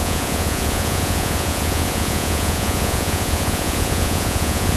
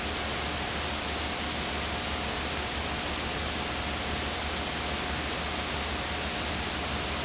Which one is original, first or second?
second